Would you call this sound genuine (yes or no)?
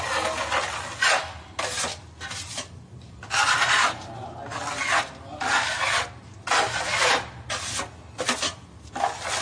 yes